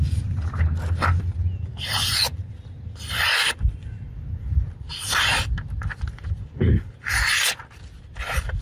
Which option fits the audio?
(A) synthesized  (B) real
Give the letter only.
B